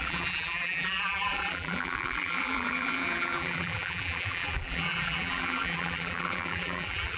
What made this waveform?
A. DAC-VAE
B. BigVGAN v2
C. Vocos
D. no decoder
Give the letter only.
B